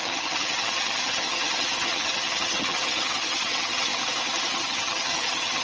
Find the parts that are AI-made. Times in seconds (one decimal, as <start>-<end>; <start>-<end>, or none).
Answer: 0.0-3.9; 4.5-5.6